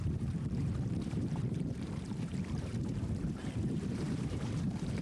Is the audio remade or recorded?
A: remade